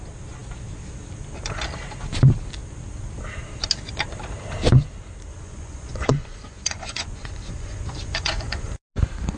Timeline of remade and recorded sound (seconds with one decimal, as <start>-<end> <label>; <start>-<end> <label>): 0.0-5.3 recorded; 5.3-8.8 remade; 8.8-9.4 recorded